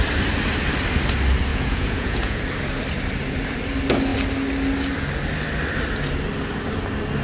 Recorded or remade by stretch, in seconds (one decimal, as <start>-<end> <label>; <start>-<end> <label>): 0.0-1.5 recorded; 1.5-2.4 remade; 2.4-7.2 recorded